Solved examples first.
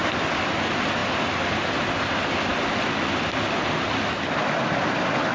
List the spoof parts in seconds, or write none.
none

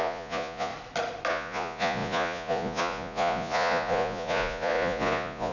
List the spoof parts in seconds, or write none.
0.0-0.7; 1.3-5.5

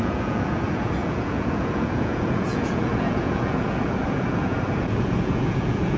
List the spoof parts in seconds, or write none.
0.0-6.0

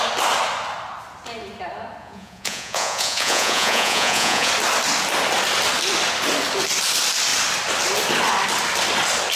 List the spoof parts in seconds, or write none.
2.0-4.5